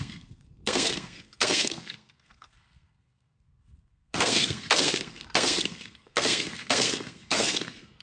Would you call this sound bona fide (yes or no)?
no